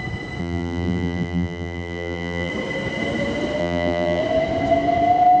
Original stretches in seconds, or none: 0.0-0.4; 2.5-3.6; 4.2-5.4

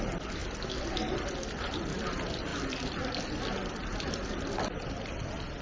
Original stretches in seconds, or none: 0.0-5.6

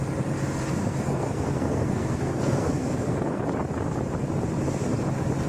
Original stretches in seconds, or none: 0.0-0.8; 3.4-5.5

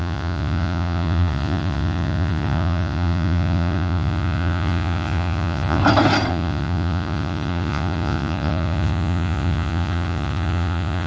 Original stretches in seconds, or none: 5.8-6.3

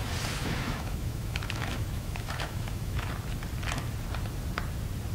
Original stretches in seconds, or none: 0.0-0.4; 3.1-5.1